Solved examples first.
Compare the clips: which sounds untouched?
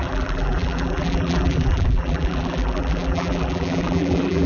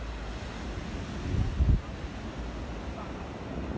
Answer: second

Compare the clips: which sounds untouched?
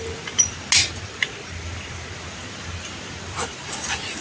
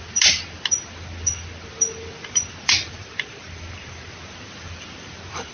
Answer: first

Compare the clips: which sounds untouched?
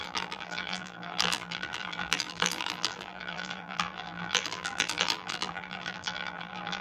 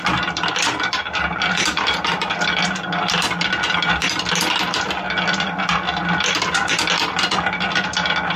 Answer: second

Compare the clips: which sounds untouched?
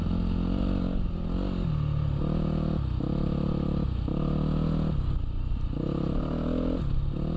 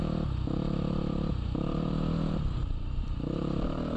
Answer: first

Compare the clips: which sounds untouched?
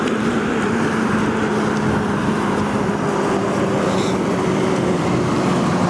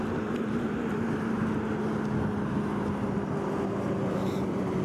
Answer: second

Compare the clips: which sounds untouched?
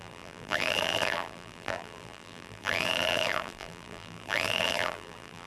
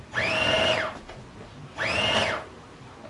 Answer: second